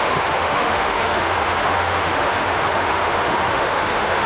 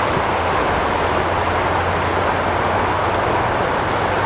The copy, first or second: first